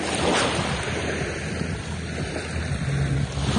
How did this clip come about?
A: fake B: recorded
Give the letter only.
B